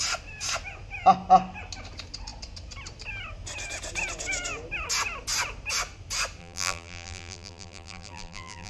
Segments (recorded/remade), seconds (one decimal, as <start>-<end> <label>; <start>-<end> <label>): 0.0-6.4 recorded; 6.4-8.7 remade